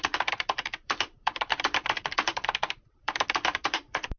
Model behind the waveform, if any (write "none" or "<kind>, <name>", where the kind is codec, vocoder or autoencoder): vocoder, BigVGAN v2